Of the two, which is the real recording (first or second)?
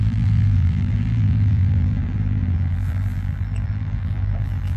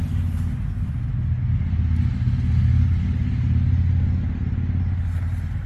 second